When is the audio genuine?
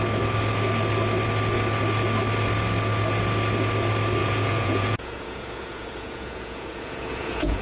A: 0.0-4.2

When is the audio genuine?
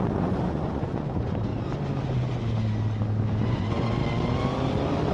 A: 1.5-3.4; 4.0-5.1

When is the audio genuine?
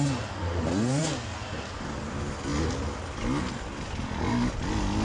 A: 0.0-5.0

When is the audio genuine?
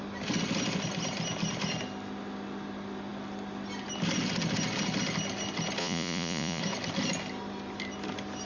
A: 0.0-5.8; 6.6-8.5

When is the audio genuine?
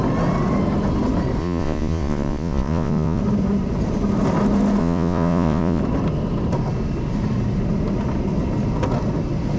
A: 0.0-1.4; 3.2-4.8; 5.8-9.6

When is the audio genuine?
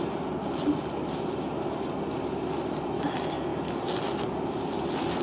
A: 0.0-5.2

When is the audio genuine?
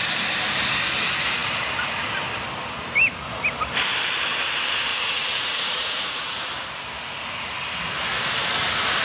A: 0.0-4.9; 6.5-9.0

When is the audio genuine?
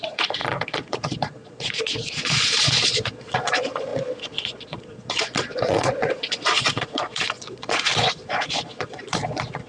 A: none